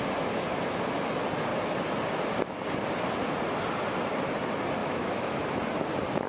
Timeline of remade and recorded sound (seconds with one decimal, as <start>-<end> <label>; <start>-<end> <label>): 0.0-4.8 recorded; 4.8-5.4 remade; 5.4-6.3 recorded